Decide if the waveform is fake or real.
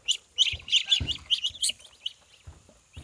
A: real